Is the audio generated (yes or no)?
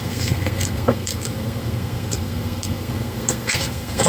yes